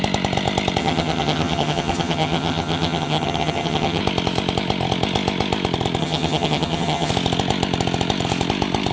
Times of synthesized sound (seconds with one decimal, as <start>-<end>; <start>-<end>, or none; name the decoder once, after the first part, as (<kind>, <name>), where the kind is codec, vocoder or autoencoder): 0.8-4.0 (vocoder, HiFi-GAN); 6.0-7.1